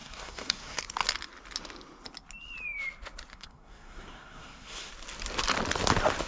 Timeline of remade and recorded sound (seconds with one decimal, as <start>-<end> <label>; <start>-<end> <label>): 0.0-0.8 remade; 0.8-3.3 recorded; 3.3-4.9 remade; 4.9-6.3 recorded